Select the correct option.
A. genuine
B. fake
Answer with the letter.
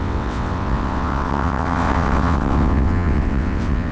B